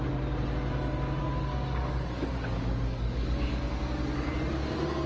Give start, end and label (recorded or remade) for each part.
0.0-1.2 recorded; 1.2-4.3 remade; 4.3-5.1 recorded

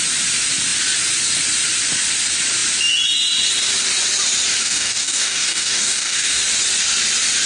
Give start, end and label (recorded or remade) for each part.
0.0-4.6 recorded; 4.6-6.4 remade; 6.4-7.5 recorded

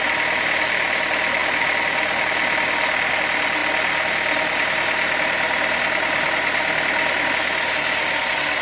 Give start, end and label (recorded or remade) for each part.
0.0-8.6 recorded

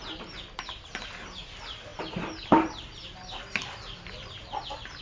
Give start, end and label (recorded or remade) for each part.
0.0-5.0 recorded

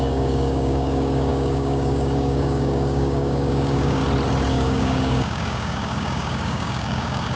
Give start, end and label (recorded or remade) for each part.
0.0-4.0 remade; 4.0-4.5 recorded; 4.5-7.4 remade

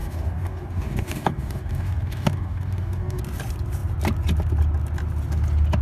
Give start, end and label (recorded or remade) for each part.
0.0-3.2 remade; 3.2-5.8 recorded